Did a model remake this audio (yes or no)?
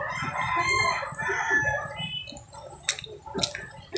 no